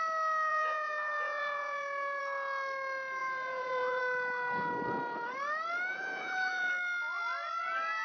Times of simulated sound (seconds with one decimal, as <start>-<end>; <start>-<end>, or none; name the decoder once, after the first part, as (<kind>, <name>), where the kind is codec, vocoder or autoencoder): 0.5-2.2 (vocoder, Vocos); 3.2-4.0; 5.9-6.7